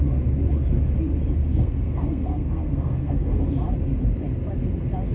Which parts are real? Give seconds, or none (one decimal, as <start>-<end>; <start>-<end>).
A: 0.0-1.5; 3.5-5.1